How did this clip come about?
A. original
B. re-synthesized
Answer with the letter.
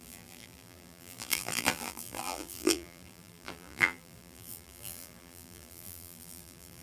B